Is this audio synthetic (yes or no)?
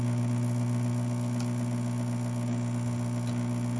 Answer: no